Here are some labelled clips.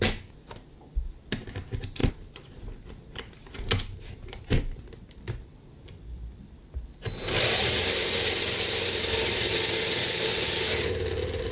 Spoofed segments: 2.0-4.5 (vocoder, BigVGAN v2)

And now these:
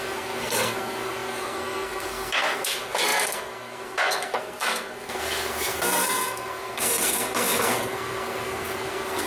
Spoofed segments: 0.0-9.3 (codec, SNAC)

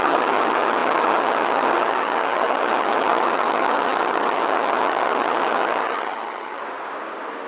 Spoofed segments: 0.0-6.6 (vocoder, HiFi-GAN)

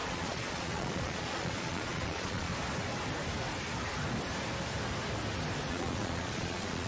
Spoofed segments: 0.0-2.5 (vocoder, Vocos); 5.7-6.9

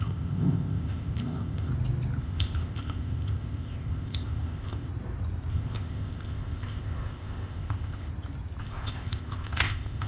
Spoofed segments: 0.0-1.7 (codec, ZipCodec); 2.2-4.9; 5.5-8.1; 8.6-10.1

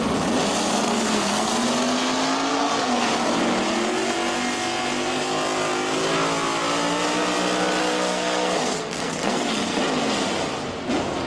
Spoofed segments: 0.7-1.5 (codec, SNAC); 2.5-3.1; 7.8-9.8

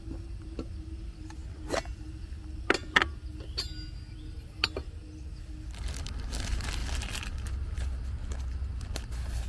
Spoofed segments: none

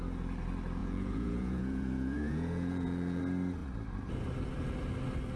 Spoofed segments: 0.8-3.2 (vocoder, Vocos)